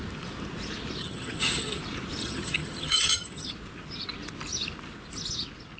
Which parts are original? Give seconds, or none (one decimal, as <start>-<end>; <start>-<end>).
0.0-1.0; 1.8-2.2; 3.5-5.8